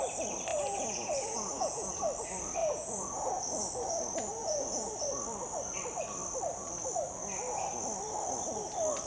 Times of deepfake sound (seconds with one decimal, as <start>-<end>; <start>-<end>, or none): 0.5-2.0; 2.6-3.4; 4.4-4.9